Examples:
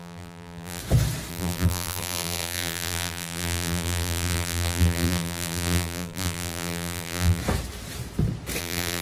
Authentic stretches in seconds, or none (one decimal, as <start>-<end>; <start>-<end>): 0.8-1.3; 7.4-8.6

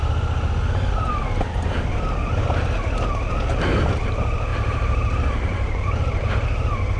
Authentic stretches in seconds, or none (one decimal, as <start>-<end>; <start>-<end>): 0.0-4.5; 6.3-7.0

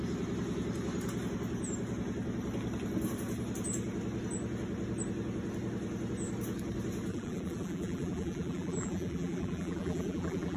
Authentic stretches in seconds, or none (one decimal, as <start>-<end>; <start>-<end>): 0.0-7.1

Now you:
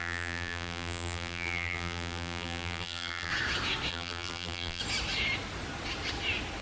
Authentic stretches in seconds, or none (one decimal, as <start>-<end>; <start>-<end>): 3.3-3.9; 4.8-6.6